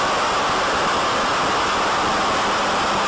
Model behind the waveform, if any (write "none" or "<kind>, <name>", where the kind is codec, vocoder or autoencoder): none